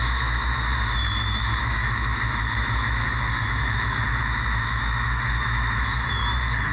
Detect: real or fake fake